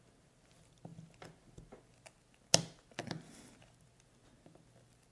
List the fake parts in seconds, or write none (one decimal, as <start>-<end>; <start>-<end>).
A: none